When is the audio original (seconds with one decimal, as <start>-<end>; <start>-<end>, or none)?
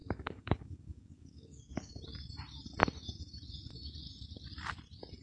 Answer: 1.9-5.2